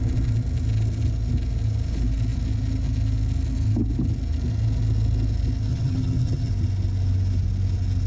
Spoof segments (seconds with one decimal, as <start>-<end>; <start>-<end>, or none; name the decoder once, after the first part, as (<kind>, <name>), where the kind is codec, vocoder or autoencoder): 5.7-6.5 (vocoder, HiFi-GAN)